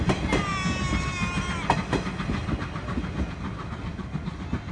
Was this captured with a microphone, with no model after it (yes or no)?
yes